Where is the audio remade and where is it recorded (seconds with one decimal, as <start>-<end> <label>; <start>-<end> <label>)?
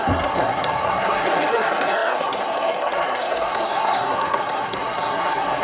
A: 0.0-5.6 remade